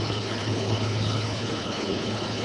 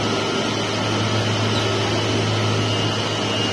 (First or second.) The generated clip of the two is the first